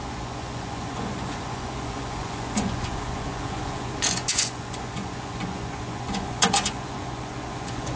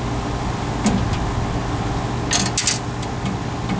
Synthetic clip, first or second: first